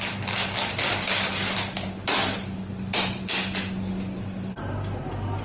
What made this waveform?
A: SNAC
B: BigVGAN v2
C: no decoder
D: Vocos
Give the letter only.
C